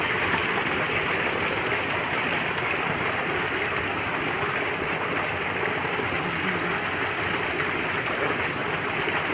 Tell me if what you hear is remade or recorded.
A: recorded